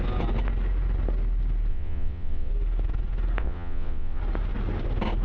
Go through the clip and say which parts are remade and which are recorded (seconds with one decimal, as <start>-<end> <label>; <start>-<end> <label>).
0.0-1.7 recorded; 1.7-2.5 remade; 2.5-3.4 recorded; 3.4-4.2 remade; 4.2-5.2 recorded